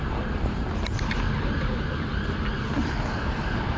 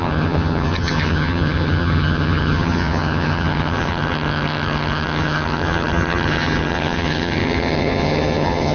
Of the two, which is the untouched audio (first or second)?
first